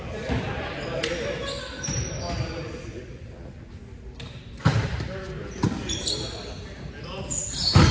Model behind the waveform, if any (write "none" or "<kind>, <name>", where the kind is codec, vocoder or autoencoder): none